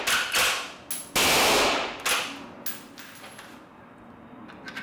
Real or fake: real